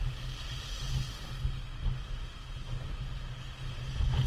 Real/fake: real